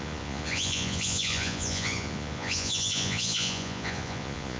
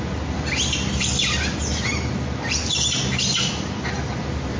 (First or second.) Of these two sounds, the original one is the second